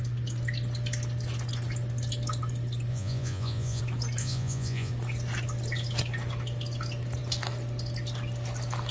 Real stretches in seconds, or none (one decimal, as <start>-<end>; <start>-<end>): 0.0-2.9; 3.8-4.2; 4.9-8.9